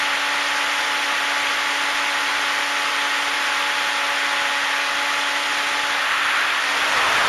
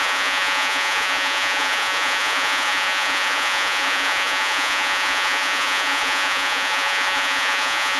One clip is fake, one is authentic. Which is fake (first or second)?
second